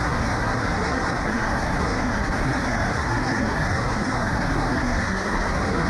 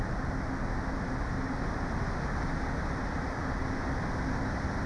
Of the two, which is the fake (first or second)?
first